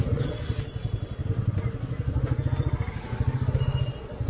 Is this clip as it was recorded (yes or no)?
yes